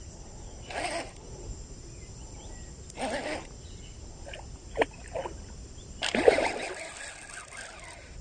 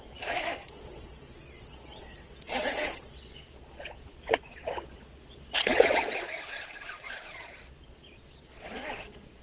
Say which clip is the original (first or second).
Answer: first